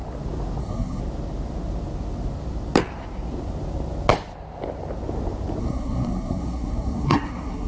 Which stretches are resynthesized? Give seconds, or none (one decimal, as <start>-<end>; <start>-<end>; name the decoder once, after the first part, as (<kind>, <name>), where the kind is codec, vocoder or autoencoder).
0.6-1.0 (codec, SNAC); 5.6-7.7